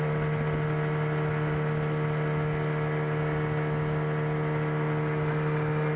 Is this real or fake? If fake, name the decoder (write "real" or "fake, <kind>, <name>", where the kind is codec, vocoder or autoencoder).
real